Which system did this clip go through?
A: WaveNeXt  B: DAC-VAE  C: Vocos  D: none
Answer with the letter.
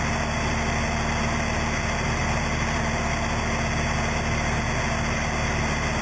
D